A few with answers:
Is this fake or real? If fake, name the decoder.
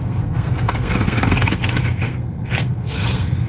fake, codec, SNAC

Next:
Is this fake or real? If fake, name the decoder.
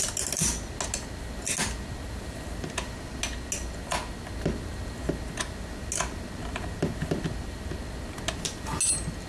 real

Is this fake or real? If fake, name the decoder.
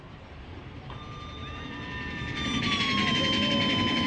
real